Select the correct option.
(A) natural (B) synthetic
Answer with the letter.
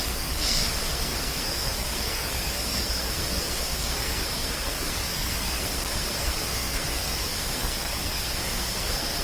B